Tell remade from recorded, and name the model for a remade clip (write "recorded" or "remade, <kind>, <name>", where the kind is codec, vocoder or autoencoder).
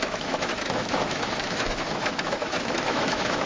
remade, autoencoder, DAC-VAE